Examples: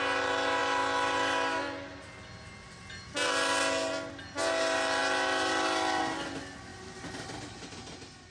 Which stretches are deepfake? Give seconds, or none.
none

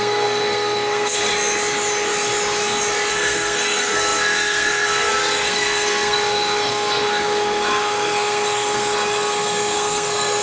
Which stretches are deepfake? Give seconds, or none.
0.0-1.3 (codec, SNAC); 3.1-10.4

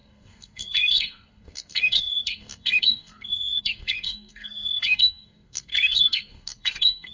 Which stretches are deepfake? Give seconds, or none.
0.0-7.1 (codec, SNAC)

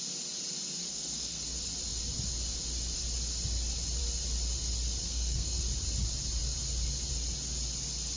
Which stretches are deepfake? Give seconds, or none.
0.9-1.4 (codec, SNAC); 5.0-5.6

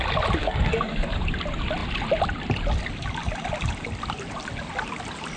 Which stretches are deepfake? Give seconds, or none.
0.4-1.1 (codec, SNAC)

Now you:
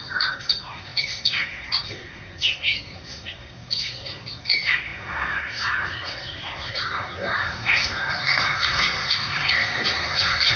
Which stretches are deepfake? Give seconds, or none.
0.0-10.6 (codec, SNAC)